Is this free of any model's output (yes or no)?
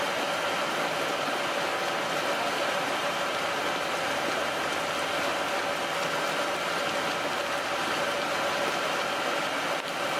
yes